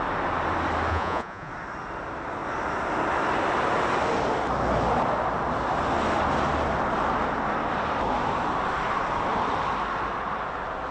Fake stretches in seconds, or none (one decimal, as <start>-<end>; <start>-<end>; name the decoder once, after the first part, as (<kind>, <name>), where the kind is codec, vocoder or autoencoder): 0.9-1.5 (vocoder, Vocos)